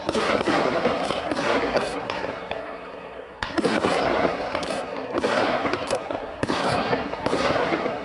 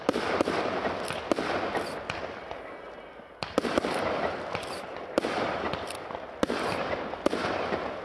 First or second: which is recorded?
second